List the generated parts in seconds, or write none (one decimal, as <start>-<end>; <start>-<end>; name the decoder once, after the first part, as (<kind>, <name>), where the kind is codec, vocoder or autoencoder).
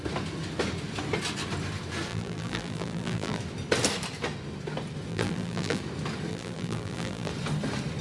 2.1-3.4 (vocoder, BigVGAN v2); 5.1-5.8; 6.3-7.3